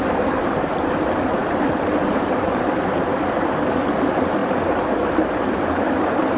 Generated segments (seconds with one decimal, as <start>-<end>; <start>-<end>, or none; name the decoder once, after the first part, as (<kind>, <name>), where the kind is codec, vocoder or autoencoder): none